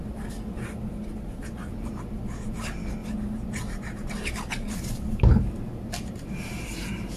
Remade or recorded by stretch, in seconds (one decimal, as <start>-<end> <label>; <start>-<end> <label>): 0.0-1.1 recorded; 1.1-1.9 remade; 1.9-3.0 recorded; 3.0-7.2 remade